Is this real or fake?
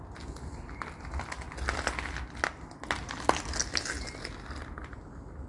real